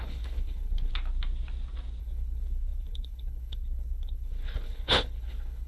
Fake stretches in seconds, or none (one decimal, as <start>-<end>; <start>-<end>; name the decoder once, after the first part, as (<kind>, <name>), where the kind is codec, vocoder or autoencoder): 0.0-0.9 (codec, HILCodec); 2.0-5.7